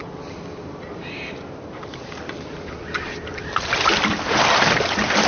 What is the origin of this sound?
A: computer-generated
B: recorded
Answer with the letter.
B